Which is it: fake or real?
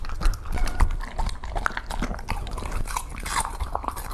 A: real